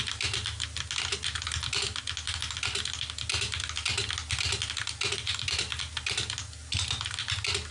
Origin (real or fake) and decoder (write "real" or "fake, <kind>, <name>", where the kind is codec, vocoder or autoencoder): real